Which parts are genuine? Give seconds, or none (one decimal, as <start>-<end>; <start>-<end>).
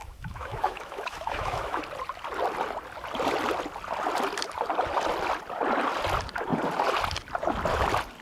1.8-8.2